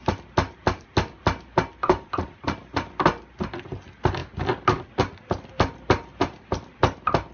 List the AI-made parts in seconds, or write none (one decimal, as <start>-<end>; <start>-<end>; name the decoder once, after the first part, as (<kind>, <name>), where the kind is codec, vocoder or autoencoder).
none